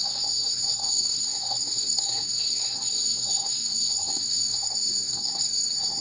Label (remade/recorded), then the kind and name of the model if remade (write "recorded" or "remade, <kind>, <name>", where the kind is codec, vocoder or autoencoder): remade, codec, SNAC